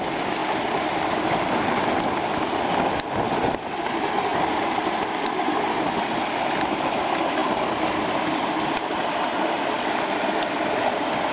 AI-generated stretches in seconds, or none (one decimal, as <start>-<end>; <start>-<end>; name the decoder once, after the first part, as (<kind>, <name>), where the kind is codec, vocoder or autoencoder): none